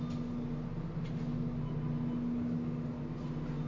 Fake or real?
real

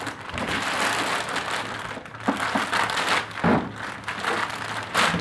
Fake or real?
real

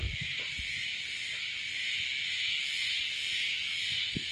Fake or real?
real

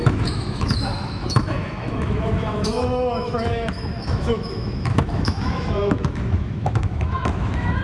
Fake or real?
fake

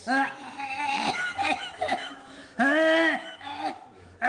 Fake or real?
fake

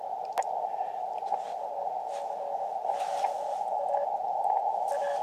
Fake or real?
real